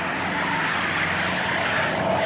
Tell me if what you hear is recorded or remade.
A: recorded